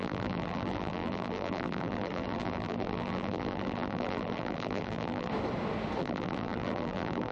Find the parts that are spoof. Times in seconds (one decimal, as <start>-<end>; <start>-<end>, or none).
0.0-5.3; 6.0-7.3